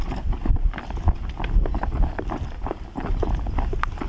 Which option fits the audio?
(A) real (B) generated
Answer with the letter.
A